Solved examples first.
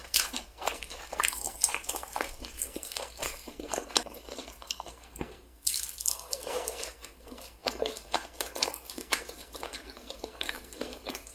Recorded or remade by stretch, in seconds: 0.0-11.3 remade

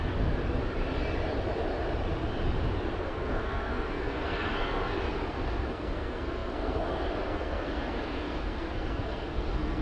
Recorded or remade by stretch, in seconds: 0.0-0.4 remade; 0.4-3.0 recorded; 3.0-4.8 remade; 4.8-5.3 recorded; 5.3-9.8 remade

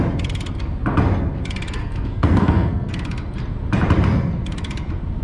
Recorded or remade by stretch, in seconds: 0.0-1.8 recorded; 1.8-2.9 remade; 2.9-5.2 recorded

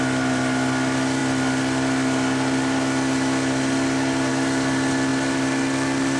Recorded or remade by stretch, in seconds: 0.0-6.2 recorded

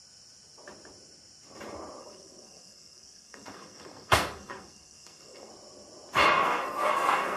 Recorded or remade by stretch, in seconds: 0.0-2.0 recorded; 2.0-5.5 remade; 5.5-6.4 recorded; 6.4-7.4 remade

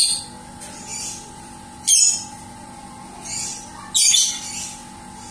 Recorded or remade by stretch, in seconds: 0.0-5.3 recorded